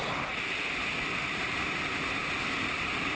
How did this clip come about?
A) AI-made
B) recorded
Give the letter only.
B